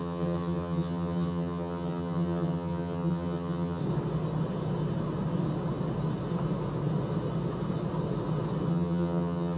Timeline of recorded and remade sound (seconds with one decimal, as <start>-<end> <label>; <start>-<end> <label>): 0.0-3.8 remade; 3.8-8.7 recorded; 8.7-9.6 remade